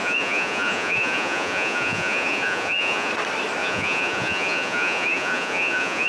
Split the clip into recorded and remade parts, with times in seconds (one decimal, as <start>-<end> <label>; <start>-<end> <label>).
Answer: 0.0-3.1 remade; 3.1-3.6 recorded; 3.6-6.1 remade